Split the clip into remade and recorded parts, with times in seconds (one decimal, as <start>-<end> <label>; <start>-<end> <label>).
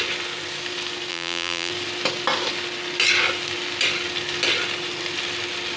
0.0-1.1 recorded; 1.1-1.7 remade; 1.7-5.8 recorded